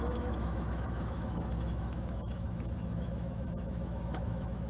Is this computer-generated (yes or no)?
yes